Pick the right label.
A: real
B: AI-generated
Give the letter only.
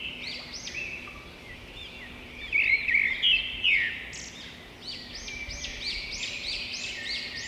A